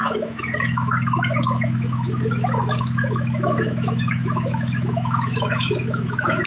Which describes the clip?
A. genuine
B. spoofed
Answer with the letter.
B